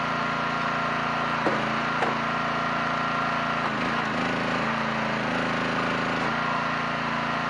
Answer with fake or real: real